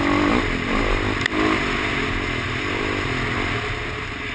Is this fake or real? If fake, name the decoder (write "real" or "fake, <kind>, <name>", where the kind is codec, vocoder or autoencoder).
real